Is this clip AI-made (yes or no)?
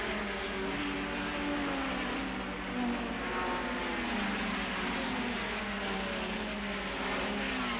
no